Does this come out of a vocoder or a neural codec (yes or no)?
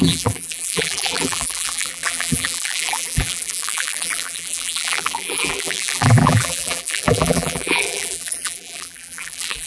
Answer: yes